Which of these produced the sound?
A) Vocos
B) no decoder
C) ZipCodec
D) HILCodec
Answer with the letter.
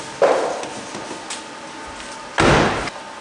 B